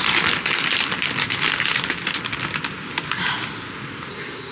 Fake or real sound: real